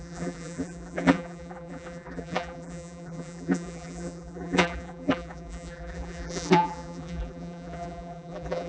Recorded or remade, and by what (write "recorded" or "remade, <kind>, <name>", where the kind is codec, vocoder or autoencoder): remade, vocoder, BigVGAN v2